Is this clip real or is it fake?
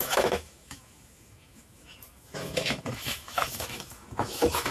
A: fake